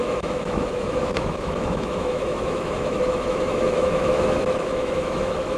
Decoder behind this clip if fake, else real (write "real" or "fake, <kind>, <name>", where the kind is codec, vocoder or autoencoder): fake, autoencoder, DAC-VAE